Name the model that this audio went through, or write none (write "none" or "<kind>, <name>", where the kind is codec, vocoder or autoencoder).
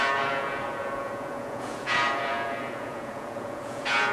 vocoder, Vocos